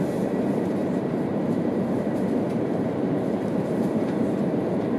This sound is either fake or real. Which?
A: fake